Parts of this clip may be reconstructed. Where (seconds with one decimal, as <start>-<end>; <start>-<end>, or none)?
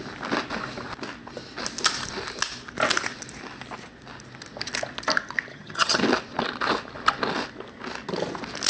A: 5.5-6.0